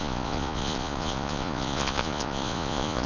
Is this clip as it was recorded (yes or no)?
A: no